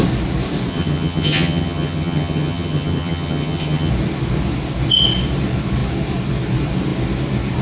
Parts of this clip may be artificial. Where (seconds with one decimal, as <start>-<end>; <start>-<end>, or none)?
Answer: 0.7-3.9